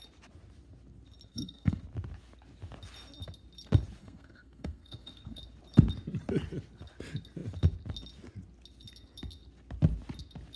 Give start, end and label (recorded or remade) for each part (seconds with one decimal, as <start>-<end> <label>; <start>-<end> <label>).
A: 0.0-1.3 recorded; 1.3-1.8 remade; 1.8-4.0 recorded; 4.0-5.4 remade; 5.4-10.6 recorded